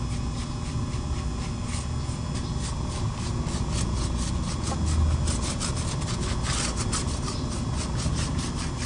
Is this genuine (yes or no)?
yes